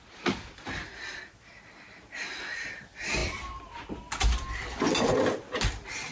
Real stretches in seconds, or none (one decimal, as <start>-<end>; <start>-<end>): 0.0-6.1